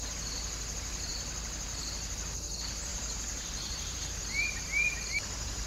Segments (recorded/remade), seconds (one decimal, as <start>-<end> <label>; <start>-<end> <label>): 0.0-2.9 recorded; 2.9-4.0 remade; 4.0-5.7 recorded